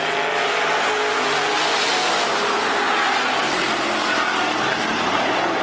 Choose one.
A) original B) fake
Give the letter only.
A